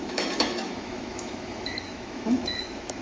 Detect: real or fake fake